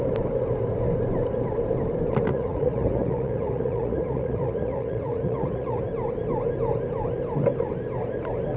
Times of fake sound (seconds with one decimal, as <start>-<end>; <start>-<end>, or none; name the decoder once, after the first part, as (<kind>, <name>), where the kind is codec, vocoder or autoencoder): 2.3-5.8 (vocoder, Vocos)